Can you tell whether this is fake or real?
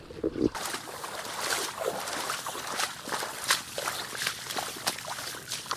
real